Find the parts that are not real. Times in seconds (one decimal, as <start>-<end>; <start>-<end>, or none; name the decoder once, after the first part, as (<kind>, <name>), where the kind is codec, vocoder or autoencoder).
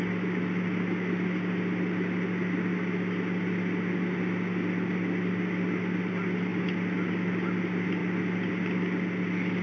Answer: none